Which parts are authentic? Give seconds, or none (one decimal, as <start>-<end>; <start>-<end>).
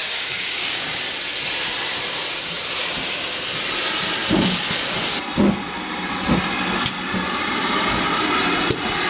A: 1.0-9.1